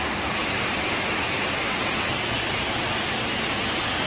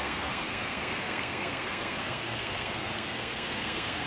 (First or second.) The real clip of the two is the first